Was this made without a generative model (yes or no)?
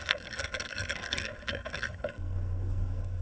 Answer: no